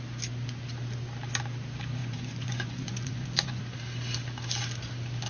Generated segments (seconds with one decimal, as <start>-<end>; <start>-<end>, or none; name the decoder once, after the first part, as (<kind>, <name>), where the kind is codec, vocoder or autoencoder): 2.0-3.6 (vocoder, Vocos)